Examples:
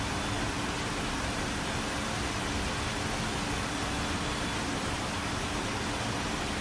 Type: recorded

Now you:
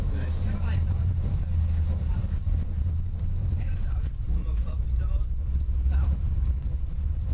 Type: remade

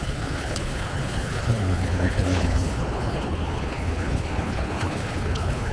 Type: remade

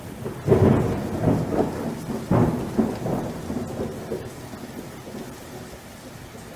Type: recorded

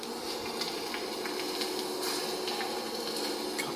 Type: recorded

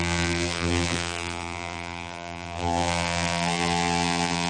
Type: remade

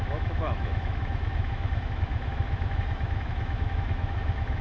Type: remade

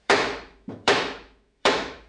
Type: remade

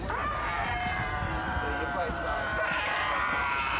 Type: remade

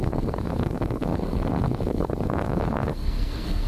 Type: remade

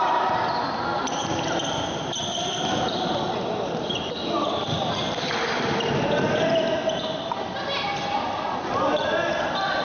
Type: recorded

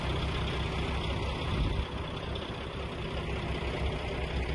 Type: recorded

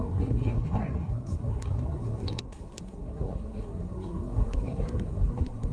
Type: remade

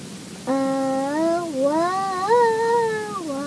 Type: recorded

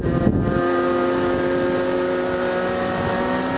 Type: recorded